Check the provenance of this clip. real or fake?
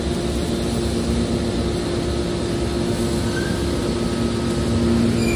real